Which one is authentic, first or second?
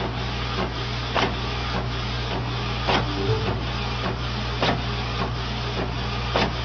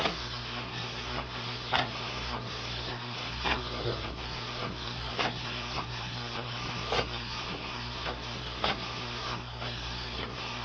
first